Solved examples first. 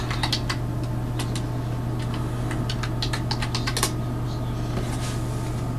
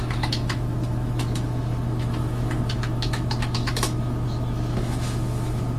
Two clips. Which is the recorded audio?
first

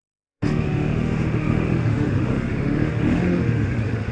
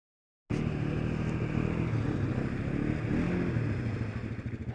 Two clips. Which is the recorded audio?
second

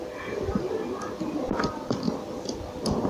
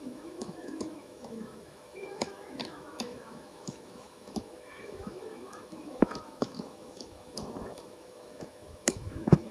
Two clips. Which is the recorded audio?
first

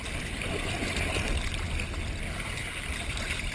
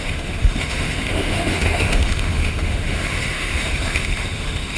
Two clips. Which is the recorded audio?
first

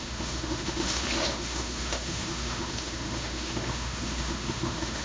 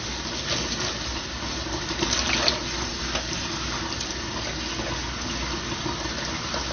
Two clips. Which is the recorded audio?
second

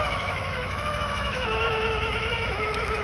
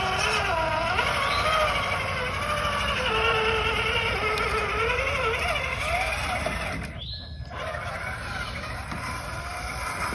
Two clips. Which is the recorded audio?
second